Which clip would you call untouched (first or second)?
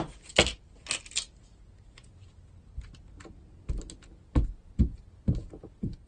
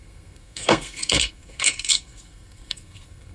first